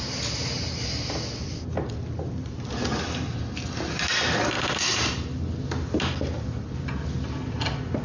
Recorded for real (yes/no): yes